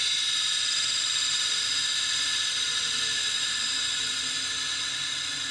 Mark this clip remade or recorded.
recorded